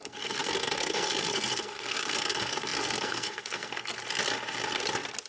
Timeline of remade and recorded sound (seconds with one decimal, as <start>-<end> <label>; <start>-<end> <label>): 0.0-3.9 remade; 3.9-5.3 recorded